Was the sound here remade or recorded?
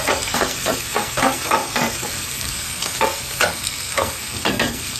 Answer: remade